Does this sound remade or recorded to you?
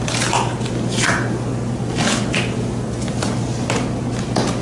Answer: recorded